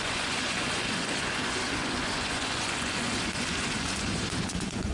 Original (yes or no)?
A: no